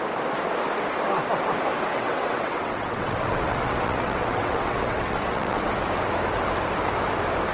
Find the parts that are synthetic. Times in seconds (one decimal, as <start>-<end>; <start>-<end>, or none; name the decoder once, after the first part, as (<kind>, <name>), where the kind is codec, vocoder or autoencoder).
1.9-5.7 (vocoder, WaveNeXt)